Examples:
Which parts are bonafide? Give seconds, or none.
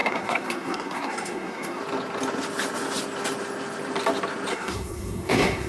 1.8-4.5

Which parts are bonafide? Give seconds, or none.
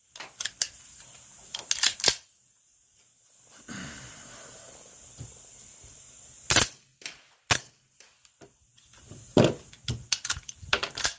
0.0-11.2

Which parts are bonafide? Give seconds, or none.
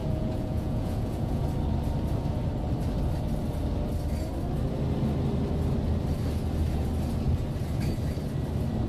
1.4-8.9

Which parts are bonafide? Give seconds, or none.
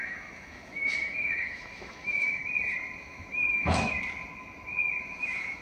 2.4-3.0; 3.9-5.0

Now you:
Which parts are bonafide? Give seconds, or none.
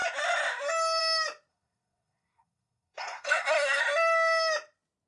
0.0-1.5; 3.8-5.1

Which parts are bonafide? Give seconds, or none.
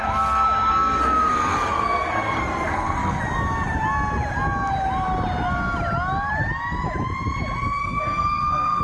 0.0-0.7; 3.2-7.8